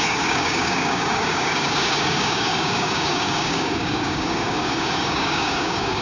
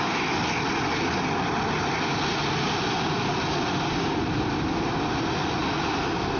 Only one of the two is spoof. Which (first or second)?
first